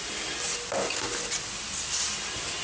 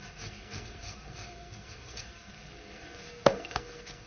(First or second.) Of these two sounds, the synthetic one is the second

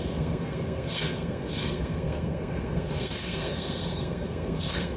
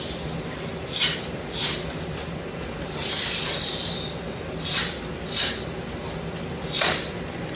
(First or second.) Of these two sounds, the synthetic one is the first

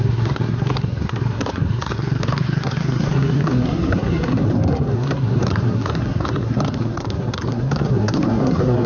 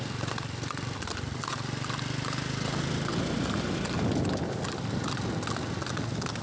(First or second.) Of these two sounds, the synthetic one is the first